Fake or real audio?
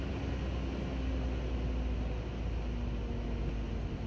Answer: real